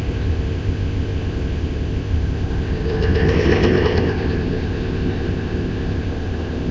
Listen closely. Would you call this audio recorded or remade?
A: remade